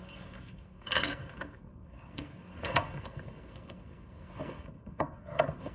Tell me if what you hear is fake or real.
fake